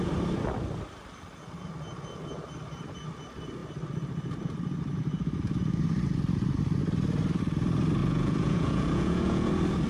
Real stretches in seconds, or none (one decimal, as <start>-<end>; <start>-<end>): 0.0-8.0; 9.5-9.9